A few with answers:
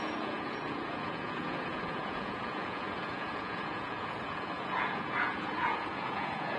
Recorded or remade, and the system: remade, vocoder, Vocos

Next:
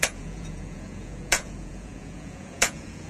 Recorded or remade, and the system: remade, vocoder, Vocos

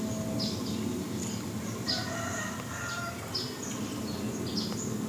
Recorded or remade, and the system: recorded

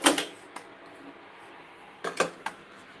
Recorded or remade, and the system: recorded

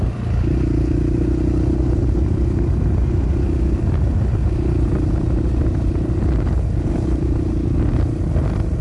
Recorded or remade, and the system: recorded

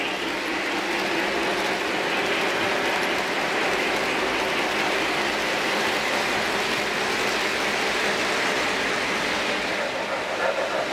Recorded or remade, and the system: recorded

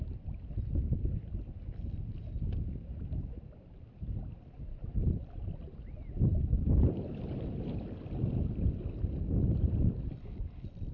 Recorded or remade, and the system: recorded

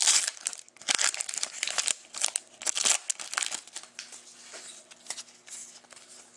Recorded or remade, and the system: recorded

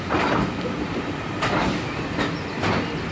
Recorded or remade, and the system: recorded